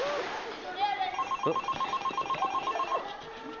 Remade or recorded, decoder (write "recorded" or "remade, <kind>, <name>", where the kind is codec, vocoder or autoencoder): recorded